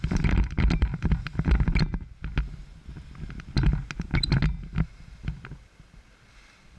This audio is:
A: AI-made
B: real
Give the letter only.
B